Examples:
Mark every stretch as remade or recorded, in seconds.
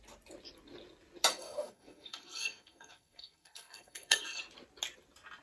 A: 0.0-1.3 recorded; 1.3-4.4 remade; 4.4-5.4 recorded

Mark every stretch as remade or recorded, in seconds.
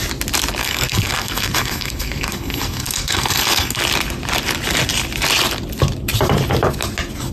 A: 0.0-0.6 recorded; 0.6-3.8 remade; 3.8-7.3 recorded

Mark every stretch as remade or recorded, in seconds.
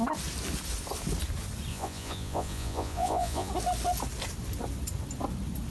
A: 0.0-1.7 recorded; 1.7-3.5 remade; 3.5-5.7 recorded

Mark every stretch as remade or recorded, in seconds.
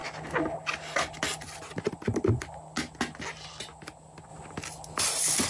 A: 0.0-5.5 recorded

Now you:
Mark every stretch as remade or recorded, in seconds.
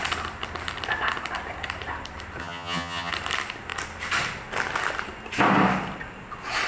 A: 0.0-2.4 recorded; 2.4-3.1 remade; 3.1-6.7 recorded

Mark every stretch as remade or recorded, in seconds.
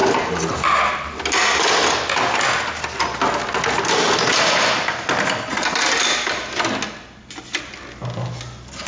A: 0.0-8.9 recorded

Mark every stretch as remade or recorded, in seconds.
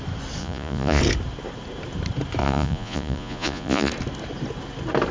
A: 0.0-0.4 recorded; 0.4-1.0 remade; 1.0-2.4 recorded; 2.4-3.9 remade; 3.9-5.1 recorded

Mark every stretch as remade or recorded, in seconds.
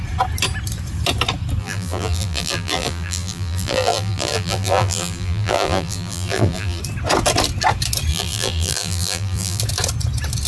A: 0.0-1.6 recorded; 1.6-6.8 remade; 6.8-8.1 recorded; 8.1-9.6 remade; 9.6-10.5 recorded